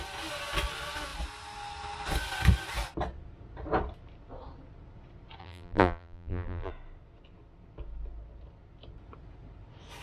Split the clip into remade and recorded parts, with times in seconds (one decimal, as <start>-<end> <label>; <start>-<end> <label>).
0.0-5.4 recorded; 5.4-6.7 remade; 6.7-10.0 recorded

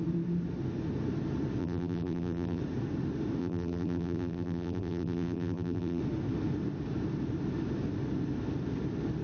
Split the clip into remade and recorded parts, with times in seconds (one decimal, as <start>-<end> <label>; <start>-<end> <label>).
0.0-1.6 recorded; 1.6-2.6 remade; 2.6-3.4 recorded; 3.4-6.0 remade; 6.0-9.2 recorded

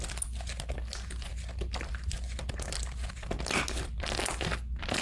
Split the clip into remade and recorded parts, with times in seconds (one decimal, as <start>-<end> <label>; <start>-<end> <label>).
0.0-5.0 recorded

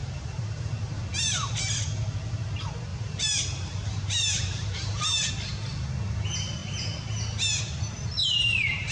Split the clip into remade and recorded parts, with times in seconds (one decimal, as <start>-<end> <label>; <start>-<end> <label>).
0.0-1.0 remade; 1.0-2.9 recorded; 2.9-5.3 remade; 5.3-8.2 recorded; 8.2-8.9 remade